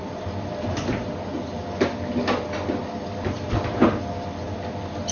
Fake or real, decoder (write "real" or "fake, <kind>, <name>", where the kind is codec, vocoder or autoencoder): real